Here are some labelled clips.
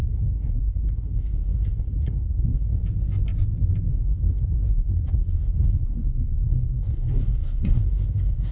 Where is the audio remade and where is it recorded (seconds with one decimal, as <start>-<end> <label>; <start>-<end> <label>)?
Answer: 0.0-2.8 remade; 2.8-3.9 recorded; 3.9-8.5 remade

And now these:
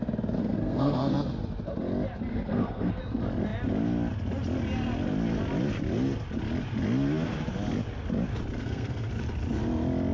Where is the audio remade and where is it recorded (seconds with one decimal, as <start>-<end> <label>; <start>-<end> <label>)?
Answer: 0.0-0.4 recorded; 0.4-1.1 remade; 1.1-2.3 recorded; 2.3-3.0 remade; 3.0-8.6 recorded; 8.6-9.1 remade; 9.1-10.1 recorded

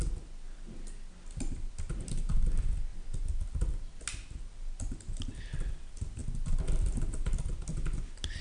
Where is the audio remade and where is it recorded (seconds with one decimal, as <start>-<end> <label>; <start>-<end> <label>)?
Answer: 0.0-8.4 recorded

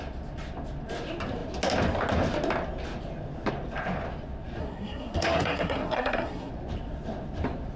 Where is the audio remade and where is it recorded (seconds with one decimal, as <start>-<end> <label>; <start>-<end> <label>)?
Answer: 0.0-4.6 recorded; 4.6-6.5 remade; 6.5-7.8 recorded